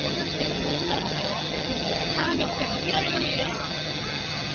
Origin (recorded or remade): remade